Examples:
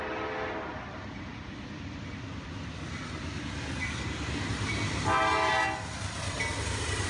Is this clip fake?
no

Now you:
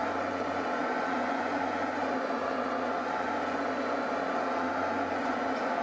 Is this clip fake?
yes